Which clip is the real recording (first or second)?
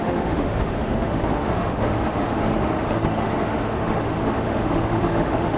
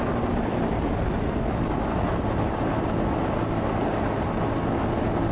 second